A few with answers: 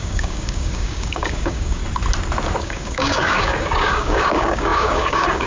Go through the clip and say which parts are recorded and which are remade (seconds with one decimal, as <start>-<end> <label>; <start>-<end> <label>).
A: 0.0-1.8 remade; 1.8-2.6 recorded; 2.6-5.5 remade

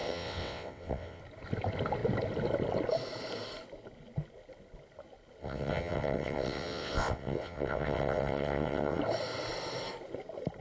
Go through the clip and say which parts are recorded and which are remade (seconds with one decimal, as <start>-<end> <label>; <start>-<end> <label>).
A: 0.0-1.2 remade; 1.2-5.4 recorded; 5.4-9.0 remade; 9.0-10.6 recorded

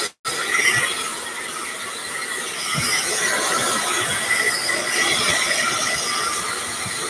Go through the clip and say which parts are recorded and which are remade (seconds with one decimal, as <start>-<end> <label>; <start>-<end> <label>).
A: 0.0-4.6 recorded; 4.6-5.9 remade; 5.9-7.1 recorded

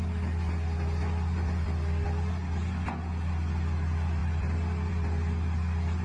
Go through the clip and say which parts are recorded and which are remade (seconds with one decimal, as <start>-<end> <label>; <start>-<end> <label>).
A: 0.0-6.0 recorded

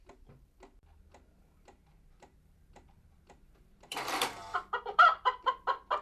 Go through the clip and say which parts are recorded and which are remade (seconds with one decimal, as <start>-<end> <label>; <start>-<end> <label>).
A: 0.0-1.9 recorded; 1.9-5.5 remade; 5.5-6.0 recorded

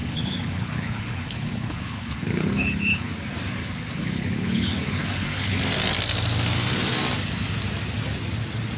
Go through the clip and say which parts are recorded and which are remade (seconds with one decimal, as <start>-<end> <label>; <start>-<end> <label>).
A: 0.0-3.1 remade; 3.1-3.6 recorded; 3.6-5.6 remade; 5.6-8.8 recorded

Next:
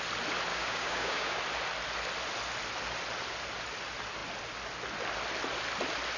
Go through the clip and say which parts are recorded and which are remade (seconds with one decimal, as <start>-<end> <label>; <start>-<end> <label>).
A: 0.0-0.5 recorded; 0.5-1.4 remade; 1.4-6.2 recorded